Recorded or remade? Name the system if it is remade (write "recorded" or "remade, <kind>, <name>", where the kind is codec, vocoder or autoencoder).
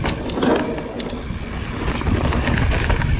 recorded